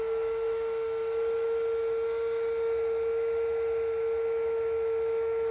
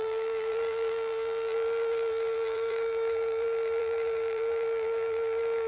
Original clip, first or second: first